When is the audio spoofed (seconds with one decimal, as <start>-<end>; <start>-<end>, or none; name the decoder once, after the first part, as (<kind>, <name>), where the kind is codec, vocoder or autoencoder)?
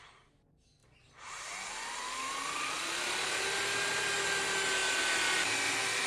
0.8-1.4 (vocoder, BigVGAN v2)